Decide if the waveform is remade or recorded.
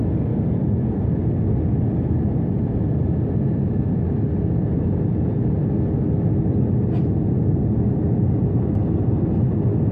recorded